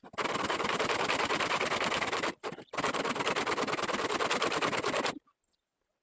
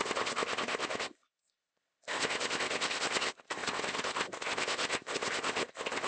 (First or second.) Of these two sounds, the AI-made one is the second